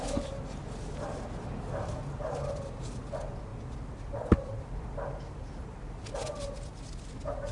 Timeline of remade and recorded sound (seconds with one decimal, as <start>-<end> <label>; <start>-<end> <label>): 0.0-7.5 recorded